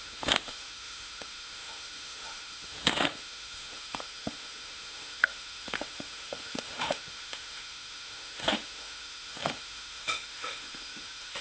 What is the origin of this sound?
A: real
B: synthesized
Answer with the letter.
B